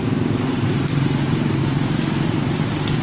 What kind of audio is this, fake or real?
real